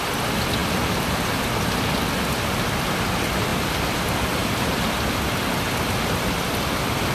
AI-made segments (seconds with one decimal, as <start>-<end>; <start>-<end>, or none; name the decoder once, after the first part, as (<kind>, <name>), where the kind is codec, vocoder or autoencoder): none